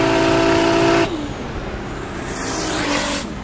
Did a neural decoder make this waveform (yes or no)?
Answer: no